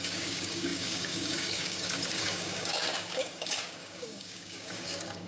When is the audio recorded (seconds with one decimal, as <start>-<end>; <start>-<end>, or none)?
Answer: none